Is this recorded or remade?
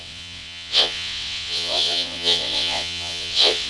remade